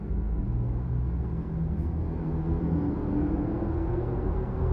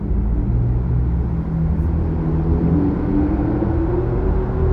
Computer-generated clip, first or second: first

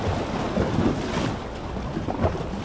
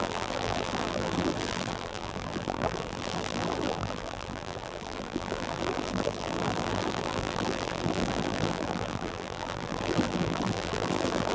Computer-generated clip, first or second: second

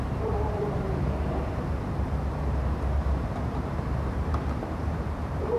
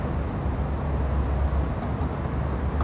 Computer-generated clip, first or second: first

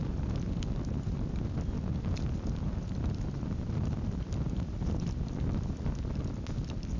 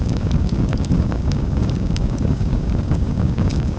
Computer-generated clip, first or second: second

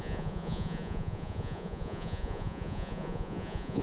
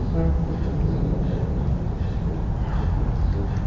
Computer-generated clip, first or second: first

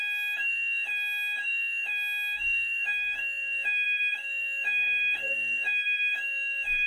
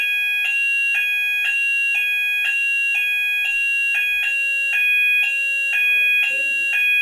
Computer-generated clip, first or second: first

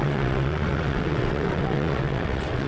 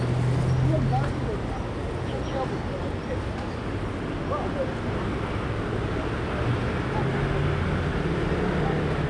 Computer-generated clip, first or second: first